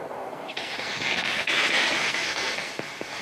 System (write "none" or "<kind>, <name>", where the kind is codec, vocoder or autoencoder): codec, SNAC